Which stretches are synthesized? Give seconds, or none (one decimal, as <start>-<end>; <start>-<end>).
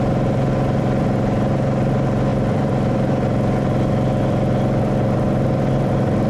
2.3-6.3